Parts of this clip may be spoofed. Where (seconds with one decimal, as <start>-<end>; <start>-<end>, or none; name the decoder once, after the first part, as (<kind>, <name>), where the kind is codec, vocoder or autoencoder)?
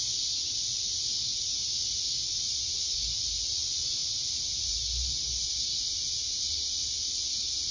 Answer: none